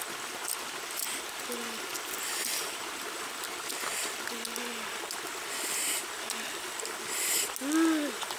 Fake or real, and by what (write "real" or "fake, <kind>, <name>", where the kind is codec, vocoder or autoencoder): real